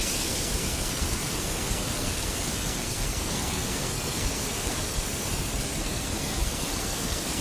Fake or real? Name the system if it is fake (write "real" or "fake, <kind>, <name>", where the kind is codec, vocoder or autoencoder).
fake, codec, SNAC